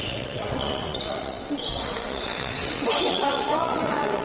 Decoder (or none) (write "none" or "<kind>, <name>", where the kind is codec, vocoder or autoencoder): vocoder, WaveNeXt